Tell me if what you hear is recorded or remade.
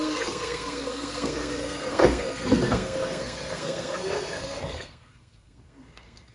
remade